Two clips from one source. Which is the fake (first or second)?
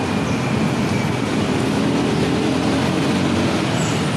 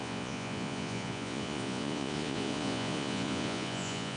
second